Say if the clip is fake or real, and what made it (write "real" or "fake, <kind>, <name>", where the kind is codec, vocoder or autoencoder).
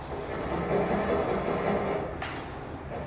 real